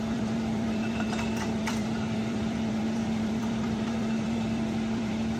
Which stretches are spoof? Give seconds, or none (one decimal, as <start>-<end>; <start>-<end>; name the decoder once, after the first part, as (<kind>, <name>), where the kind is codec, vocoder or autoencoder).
0.0-5.4 (vocoder, BigVGAN v2)